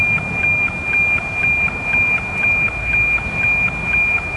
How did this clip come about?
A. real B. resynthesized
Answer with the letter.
A